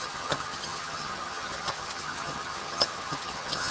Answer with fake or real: fake